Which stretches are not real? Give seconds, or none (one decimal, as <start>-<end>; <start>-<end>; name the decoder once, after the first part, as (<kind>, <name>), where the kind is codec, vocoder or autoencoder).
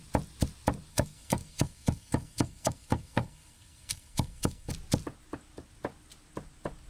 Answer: 0.9-4.7 (codec, SNAC)